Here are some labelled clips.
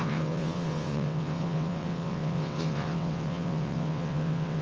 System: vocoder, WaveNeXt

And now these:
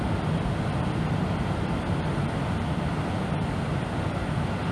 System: none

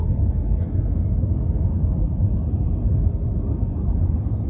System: none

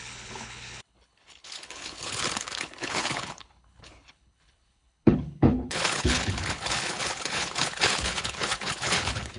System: codec, HILCodec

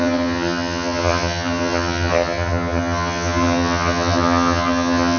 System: vocoder, HiFi-GAN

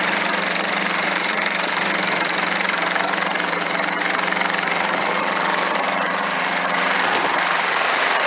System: vocoder, BigVGAN v2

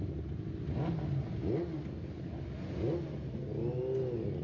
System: none